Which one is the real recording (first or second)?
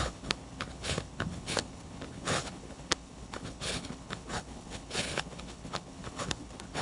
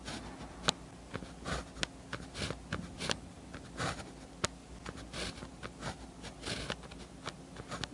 second